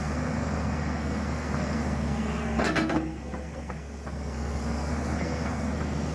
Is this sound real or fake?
fake